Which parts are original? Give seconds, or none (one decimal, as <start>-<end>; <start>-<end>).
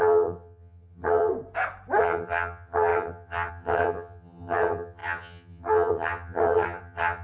1.3-2.0